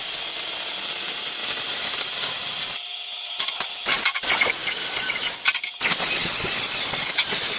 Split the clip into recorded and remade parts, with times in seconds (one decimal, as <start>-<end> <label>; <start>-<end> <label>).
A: 0.0-1.4 recorded; 1.4-3.6 remade; 3.6-7.6 recorded